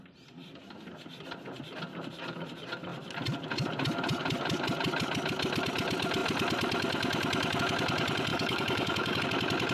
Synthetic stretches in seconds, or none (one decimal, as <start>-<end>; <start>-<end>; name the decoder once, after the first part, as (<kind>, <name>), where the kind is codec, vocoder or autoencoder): 8.3-9.2 (codec, DAC)